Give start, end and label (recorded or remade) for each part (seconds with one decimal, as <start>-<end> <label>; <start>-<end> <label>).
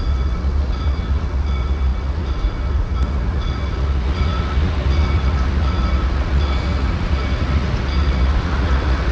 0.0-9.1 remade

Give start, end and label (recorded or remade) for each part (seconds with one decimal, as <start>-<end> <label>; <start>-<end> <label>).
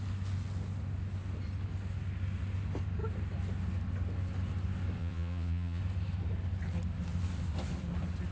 0.0-5.0 recorded; 5.0-5.8 remade; 5.8-8.3 recorded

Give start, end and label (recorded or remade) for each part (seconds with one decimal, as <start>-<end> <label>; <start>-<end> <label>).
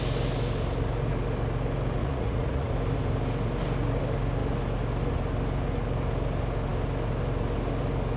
0.0-2.0 recorded; 2.0-2.7 remade; 2.7-8.2 recorded